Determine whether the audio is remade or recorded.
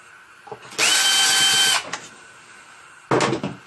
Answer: recorded